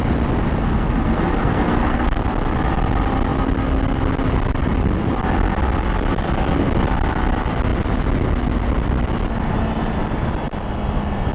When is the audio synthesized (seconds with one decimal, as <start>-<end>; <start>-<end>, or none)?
0.6-2.2